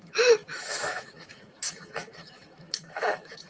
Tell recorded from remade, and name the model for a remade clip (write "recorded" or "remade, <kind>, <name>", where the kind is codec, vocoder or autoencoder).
remade, autoencoder, DAC-VAE